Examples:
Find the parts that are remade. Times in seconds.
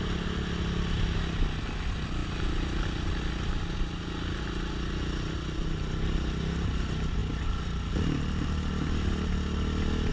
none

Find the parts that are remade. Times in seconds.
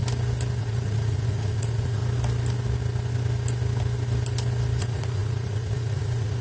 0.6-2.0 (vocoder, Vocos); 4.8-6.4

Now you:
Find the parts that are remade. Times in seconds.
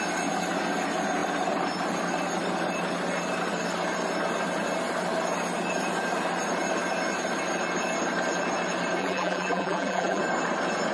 9.0-10.2 (vocoder, BigVGAN v2)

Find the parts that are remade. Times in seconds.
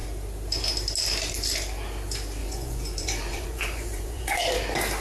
2.4-4.4 (vocoder, Vocos)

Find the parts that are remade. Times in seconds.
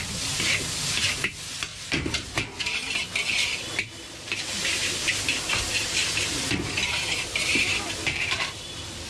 1.7-2.6 (vocoder, BigVGAN v2); 5.0-9.1